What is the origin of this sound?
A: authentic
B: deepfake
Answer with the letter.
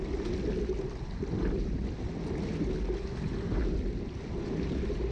A